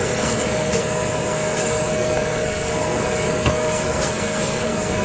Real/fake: fake